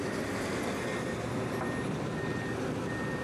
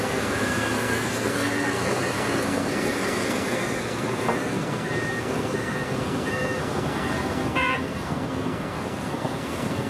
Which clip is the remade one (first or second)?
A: second